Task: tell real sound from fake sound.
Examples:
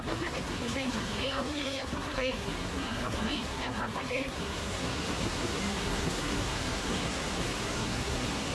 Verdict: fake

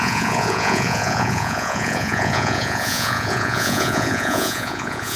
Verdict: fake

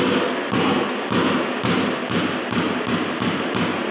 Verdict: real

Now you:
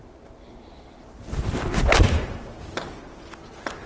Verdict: real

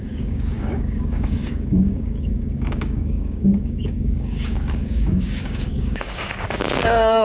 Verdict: fake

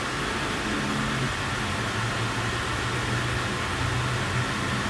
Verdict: real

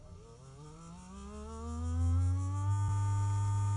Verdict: real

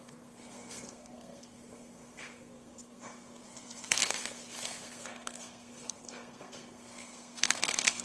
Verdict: fake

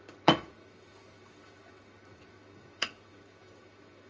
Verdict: fake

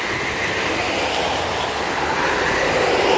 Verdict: real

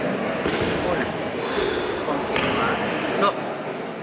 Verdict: real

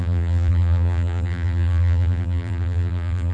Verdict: fake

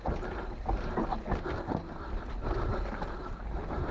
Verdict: real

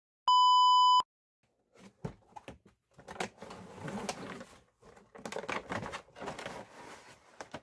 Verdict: real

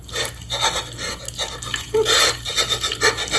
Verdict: real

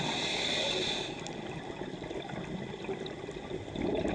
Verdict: real